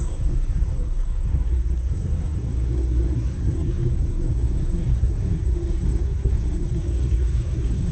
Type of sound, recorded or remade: remade